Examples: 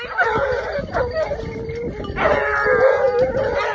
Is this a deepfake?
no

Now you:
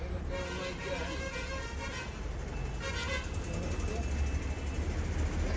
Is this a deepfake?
no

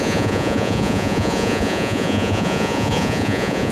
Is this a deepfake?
yes